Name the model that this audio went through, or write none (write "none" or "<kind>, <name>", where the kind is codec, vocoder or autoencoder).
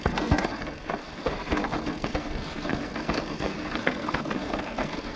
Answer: codec, SNAC